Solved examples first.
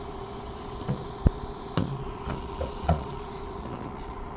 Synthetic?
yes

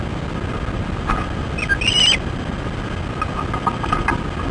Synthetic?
no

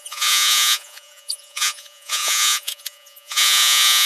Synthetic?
yes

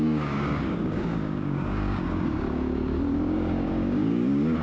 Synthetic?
yes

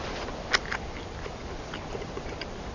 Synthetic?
no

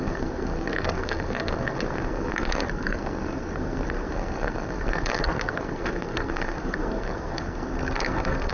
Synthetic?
yes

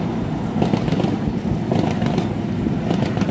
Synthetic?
no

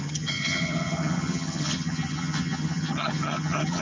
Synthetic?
yes